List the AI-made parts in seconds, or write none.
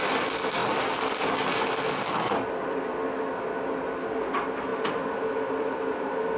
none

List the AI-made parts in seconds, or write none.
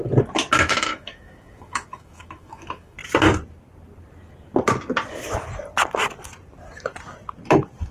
0.6-3.0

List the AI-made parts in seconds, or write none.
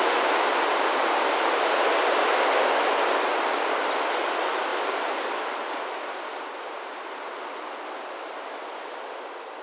none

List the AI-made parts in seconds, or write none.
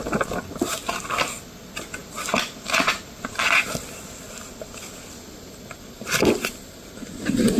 none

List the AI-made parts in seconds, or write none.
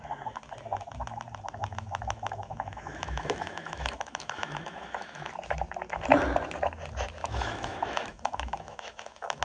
1.6-5.3; 7.2-9.4